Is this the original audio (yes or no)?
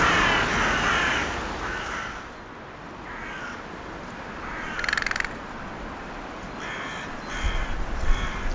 yes